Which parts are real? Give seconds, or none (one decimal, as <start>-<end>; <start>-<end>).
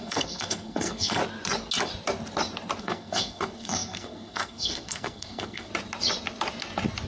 1.2-2.8; 5.7-7.1